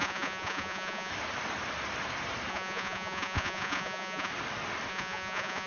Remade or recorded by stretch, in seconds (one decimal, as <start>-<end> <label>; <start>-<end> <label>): 0.0-1.1 remade; 1.1-2.5 recorded; 2.5-4.3 remade; 4.3-4.9 recorded; 4.9-5.7 remade